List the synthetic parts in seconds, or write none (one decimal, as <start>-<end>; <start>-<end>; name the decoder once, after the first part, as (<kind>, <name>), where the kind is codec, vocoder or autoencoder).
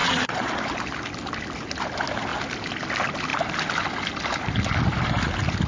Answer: 0.0-0.5 (vocoder, Vocos)